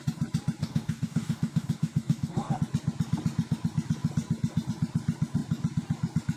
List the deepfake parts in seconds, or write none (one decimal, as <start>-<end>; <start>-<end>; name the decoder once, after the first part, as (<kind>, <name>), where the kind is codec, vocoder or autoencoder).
0.6-2.6 (codec, DAC)